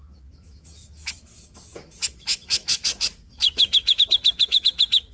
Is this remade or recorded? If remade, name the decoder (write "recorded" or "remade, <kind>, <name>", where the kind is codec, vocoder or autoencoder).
remade, autoencoder, DAC-VAE